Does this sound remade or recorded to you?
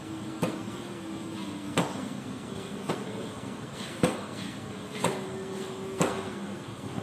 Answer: remade